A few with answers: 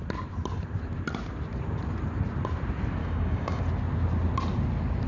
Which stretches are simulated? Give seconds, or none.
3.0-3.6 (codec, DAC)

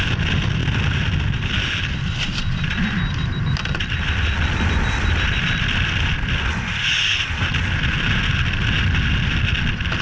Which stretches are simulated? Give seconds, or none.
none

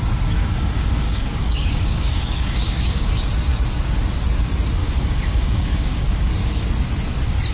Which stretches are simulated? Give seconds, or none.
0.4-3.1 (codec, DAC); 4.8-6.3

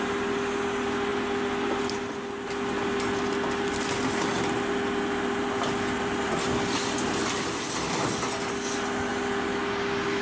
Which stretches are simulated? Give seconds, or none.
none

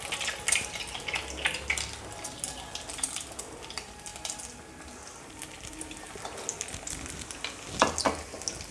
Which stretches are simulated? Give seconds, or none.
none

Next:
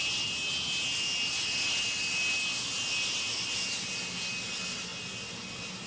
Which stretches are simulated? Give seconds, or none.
none

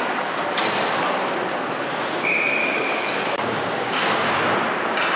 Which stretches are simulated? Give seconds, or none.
2.6-4.7 (codec, DAC)

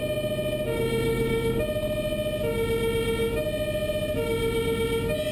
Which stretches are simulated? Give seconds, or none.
1.1-1.6 (codec, DAC)